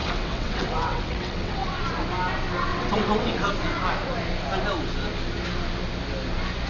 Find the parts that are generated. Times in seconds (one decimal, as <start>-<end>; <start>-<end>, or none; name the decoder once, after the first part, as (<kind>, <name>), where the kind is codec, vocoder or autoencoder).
0.0-1.8 (vocoder, WaveNeXt); 2.7-3.5